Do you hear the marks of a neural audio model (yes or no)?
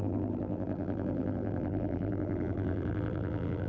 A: yes